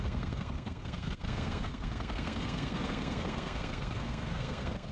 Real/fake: fake